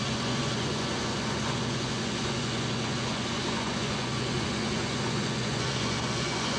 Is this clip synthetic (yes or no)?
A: yes